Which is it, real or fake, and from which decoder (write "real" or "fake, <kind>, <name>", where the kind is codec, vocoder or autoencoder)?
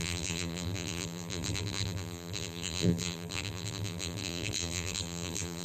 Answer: fake, vocoder, BigVGAN v2